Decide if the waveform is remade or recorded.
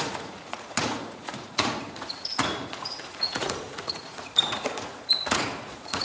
remade